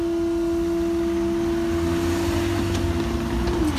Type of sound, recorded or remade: recorded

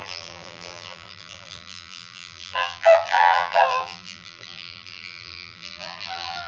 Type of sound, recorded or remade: remade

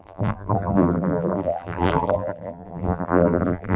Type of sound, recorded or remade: remade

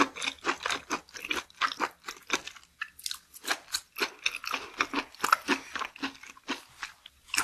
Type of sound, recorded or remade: recorded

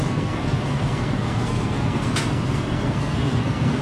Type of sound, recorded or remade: remade